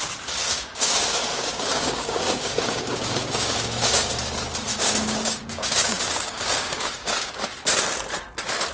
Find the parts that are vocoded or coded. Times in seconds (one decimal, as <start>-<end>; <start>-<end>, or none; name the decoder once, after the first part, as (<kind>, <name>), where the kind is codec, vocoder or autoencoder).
0.4-4.1 (codec, DAC); 4.7-7.3